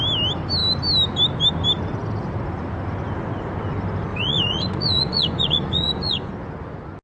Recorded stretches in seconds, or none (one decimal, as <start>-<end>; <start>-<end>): 0.0-4.1; 6.3-7.0